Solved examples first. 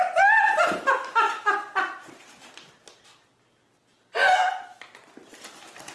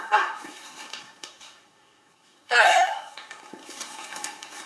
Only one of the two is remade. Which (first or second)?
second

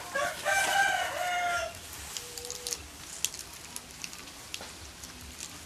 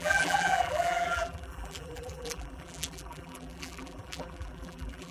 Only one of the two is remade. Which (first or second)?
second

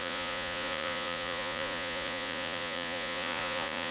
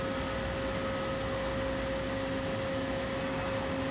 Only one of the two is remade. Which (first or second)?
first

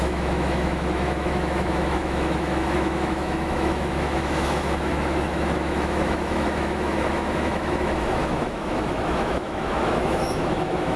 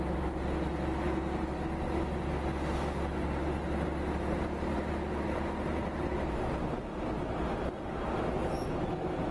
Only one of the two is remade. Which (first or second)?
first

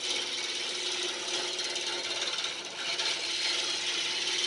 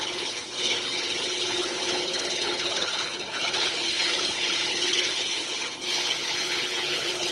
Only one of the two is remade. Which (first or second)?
second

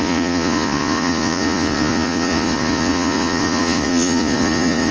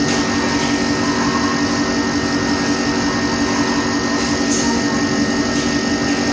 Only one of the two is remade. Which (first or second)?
first